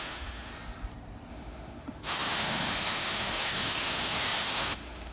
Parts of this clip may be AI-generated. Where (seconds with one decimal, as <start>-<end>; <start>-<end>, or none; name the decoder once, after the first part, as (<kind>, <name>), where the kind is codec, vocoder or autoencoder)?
0.0-0.5 (autoencoder, DAC-VAE); 1.3-5.1